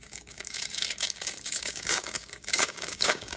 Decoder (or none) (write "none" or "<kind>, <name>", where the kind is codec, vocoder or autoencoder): codec, DAC